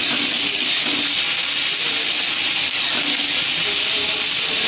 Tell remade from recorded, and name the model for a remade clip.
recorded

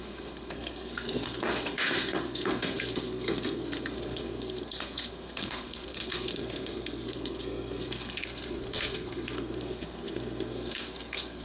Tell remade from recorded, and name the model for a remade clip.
remade, codec, SNAC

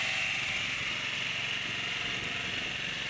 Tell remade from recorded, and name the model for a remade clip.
recorded